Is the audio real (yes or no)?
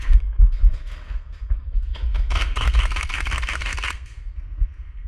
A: no